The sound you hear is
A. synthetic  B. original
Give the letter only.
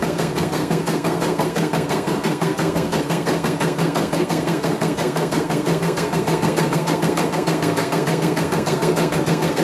A